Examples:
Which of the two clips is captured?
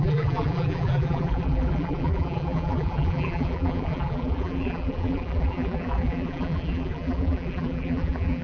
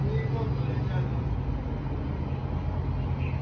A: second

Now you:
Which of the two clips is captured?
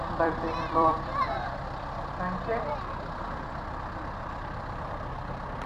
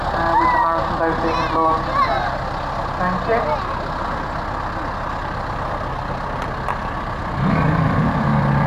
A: second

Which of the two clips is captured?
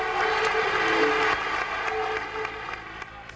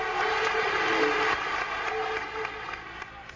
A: first